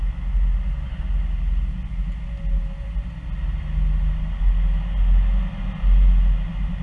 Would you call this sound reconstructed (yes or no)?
no